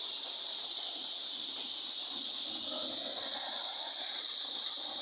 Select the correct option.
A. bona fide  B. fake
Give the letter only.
A